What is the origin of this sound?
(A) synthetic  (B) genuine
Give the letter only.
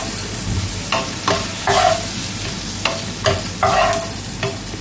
B